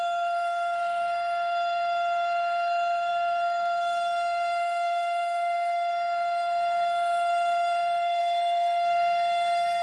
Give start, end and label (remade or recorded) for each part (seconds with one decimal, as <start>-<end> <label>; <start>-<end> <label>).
0.0-9.8 remade